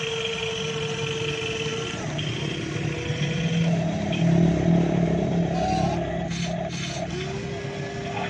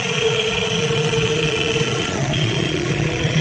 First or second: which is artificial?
second